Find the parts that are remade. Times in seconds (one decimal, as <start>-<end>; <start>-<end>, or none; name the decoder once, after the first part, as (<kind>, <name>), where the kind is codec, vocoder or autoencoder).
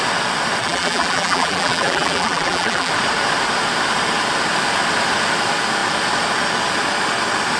0.6-2.9 (vocoder, BigVGAN v2)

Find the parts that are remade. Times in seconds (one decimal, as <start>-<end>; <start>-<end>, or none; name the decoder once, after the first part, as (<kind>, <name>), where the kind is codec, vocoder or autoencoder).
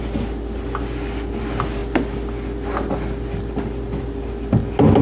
none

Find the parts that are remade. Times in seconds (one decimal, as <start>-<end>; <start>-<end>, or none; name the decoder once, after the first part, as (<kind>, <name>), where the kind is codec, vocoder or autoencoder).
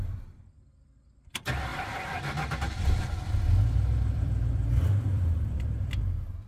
0.0-6.5 (vocoder, BigVGAN v2)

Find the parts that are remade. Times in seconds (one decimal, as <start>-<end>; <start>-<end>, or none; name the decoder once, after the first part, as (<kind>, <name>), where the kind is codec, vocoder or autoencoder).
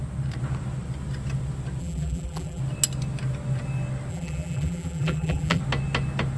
1.8-2.6 (vocoder, BigVGAN v2); 4.1-5.6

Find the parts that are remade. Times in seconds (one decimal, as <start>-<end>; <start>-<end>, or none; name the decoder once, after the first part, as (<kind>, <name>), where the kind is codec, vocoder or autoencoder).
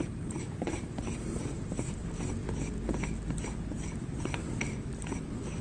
0.0-2.4 (vocoder, BigVGAN v2)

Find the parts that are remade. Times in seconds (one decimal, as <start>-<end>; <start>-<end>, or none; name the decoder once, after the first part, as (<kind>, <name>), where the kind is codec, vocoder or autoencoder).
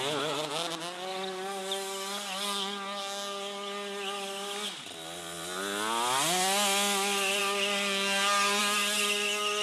none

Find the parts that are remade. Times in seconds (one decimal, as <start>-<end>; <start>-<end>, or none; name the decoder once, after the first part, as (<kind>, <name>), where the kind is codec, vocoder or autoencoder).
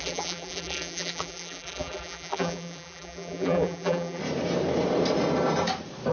0.0-4.2 (vocoder, BigVGAN v2)